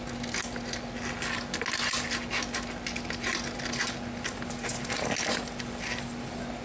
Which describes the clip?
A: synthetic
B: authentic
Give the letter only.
B